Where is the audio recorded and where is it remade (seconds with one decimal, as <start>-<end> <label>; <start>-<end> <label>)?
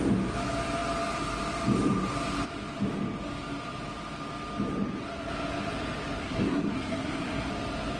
0.0-6.2 recorded; 6.2-7.5 remade; 7.5-8.0 recorded